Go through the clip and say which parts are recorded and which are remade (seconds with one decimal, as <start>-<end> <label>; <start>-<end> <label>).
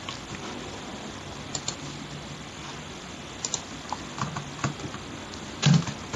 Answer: 0.0-6.2 recorded